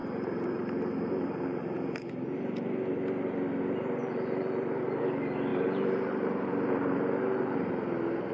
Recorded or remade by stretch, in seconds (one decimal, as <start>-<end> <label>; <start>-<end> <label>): 0.0-2.1 remade; 2.1-4.0 recorded; 4.0-5.0 remade; 5.0-5.5 recorded; 5.5-7.7 remade; 7.7-8.3 recorded